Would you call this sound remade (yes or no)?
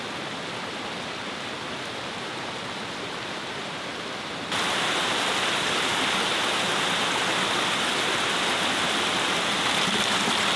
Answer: no